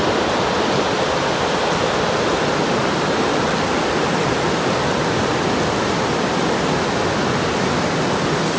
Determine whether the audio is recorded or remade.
recorded